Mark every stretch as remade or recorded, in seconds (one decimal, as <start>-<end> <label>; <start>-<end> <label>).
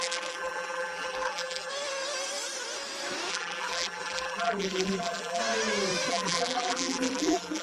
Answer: 0.0-1.7 remade; 1.7-3.3 recorded; 3.3-5.4 remade; 5.4-6.1 recorded; 6.1-7.6 remade